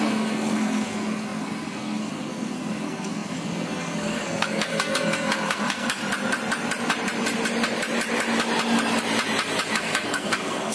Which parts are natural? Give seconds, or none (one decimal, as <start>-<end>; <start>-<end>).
6.0-9.7